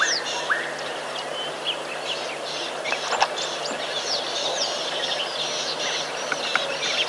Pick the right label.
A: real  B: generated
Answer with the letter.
A